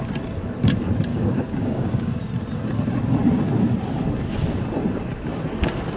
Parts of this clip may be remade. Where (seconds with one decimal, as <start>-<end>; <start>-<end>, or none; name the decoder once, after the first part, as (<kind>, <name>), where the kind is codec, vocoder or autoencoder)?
1.1-2.1 (codec, DAC)